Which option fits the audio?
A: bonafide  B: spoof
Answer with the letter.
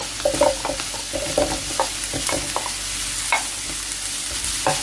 A